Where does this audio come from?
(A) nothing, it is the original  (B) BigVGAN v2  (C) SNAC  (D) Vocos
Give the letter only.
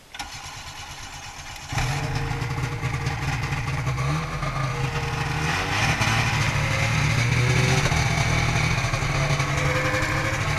A